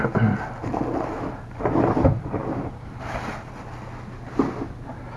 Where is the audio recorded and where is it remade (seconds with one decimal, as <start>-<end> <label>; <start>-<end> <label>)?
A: 0.0-2.4 recorded; 2.4-3.0 remade; 3.0-5.2 recorded